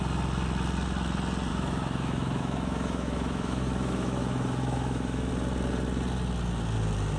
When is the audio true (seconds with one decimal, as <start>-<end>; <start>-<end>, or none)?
0.0-1.5; 5.3-7.2